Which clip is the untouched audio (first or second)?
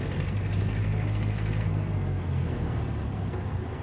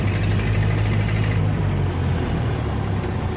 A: second